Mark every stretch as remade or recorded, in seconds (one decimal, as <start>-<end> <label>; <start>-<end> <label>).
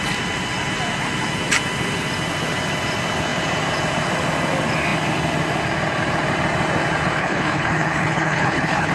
0.0-7.2 recorded; 7.2-8.9 remade